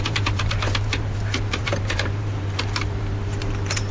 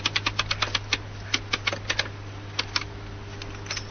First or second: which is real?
second